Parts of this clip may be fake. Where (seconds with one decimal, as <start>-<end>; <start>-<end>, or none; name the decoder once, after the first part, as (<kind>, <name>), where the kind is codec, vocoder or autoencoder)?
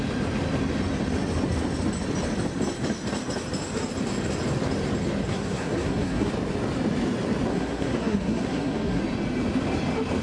5.3-6.3 (codec, SNAC); 7.5-9.0